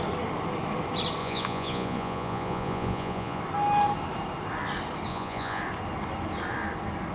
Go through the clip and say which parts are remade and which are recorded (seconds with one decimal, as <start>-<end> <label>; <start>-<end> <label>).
0.0-1.2 recorded; 1.2-3.4 remade; 3.4-5.1 recorded; 5.1-5.6 remade; 5.6-7.1 recorded